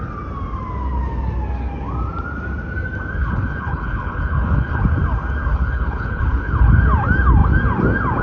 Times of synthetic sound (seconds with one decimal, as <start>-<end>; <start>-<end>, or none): 3.2-4.8; 5.5-6.8